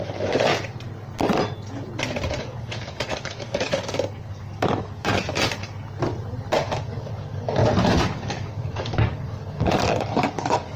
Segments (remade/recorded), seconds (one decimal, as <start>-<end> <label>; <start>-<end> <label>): 0.0-0.5 remade; 0.5-2.4 recorded; 2.4-3.7 remade; 3.7-4.2 recorded; 4.2-5.1 remade; 5.1-6.7 recorded; 6.7-7.6 remade; 7.6-8.2 recorded; 8.2-10.8 remade